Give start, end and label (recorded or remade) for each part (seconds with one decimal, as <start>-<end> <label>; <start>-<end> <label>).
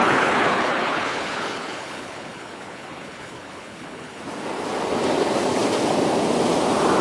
0.0-4.2 remade; 4.2-7.0 recorded